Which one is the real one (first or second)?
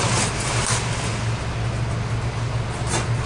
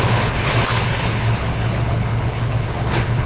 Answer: first